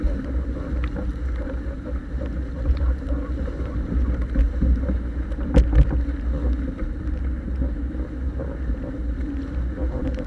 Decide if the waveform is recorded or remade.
recorded